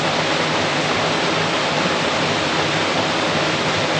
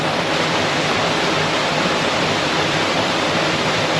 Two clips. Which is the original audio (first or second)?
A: first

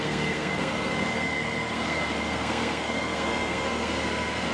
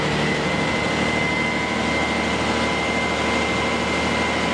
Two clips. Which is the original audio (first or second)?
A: second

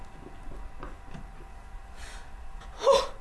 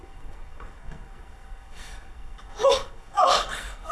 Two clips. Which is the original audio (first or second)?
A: first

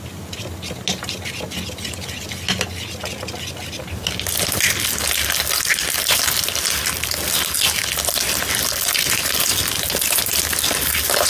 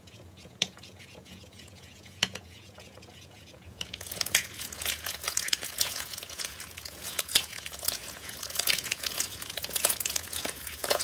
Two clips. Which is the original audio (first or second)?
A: first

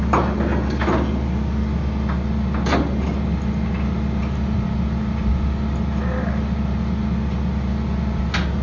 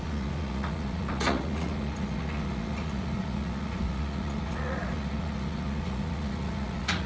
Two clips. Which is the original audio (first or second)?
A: first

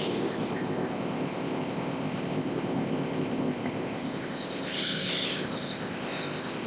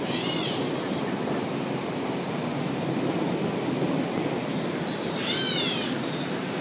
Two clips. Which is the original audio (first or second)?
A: second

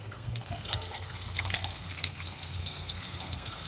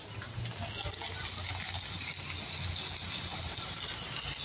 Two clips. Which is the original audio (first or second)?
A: second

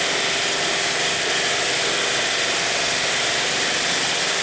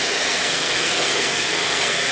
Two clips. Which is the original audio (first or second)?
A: first